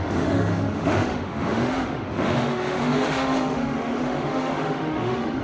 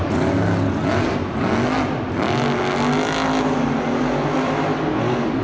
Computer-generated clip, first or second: first